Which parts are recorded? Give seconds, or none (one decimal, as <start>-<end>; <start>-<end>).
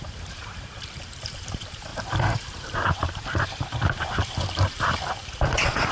none